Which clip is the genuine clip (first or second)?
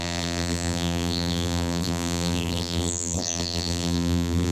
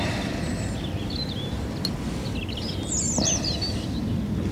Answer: second